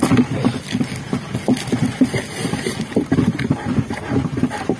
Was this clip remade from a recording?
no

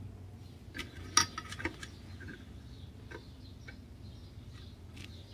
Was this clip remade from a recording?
no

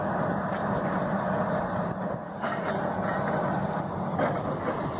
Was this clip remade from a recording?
no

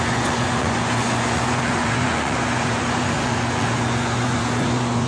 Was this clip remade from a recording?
yes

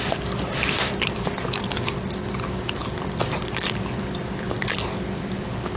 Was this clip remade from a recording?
no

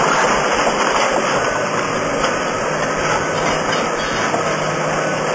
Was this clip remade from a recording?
no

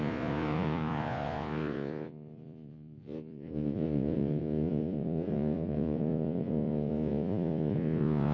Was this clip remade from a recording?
yes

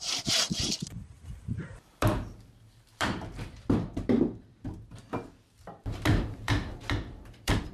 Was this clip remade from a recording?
yes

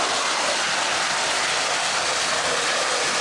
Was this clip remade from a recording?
no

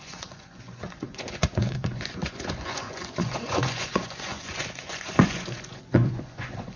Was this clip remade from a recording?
yes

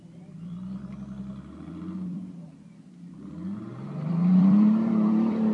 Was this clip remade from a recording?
yes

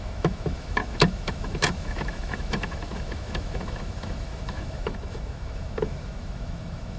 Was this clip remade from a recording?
yes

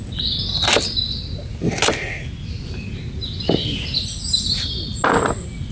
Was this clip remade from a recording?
no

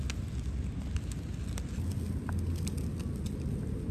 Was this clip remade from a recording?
no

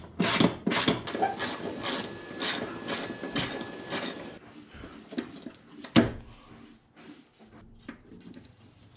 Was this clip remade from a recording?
no